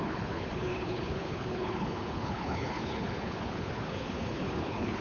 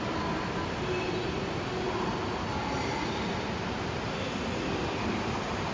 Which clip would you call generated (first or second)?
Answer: first